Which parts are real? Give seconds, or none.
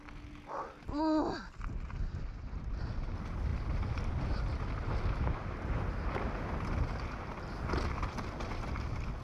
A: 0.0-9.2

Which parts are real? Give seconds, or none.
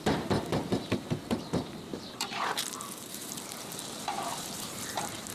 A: 0.0-0.5; 1.1-1.9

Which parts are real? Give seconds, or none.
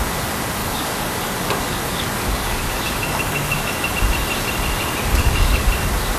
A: 0.0-0.6; 3.9-5.1; 5.7-6.2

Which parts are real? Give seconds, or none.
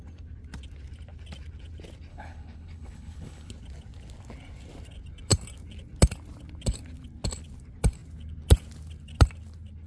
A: 0.0-2.1; 3.5-9.9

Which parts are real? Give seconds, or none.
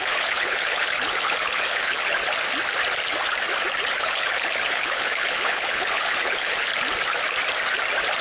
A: 2.2-3.9; 6.7-8.2